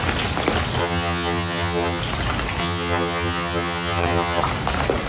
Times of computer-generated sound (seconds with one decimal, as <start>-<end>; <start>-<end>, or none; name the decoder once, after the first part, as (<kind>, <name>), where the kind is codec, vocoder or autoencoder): 0.8-2.0 (vocoder, HiFi-GAN); 2.6-4.4